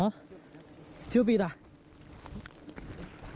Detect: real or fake real